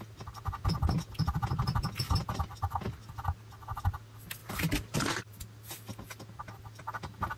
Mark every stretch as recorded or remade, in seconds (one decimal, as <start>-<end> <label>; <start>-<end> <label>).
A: 0.0-4.4 recorded; 4.4-5.4 remade; 5.4-7.4 recorded